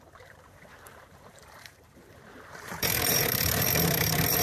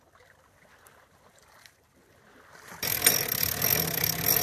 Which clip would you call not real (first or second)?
first